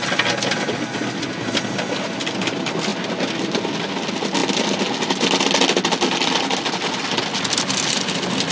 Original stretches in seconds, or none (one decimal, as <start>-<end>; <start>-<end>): 0.0-8.5